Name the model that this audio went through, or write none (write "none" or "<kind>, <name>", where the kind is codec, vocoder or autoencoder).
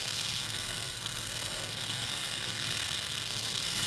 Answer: codec, SNAC